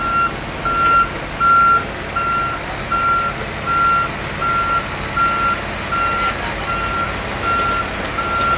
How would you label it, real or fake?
real